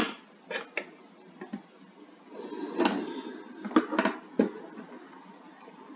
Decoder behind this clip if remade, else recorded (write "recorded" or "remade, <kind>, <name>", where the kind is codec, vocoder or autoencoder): recorded